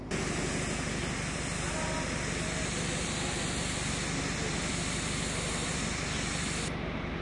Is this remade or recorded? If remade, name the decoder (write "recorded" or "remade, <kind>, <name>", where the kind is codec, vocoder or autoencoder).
recorded